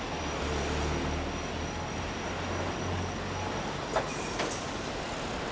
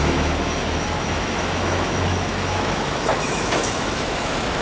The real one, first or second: first